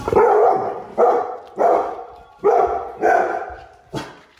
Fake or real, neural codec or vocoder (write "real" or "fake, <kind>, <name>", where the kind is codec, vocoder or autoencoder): real